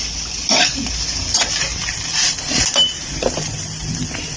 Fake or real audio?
real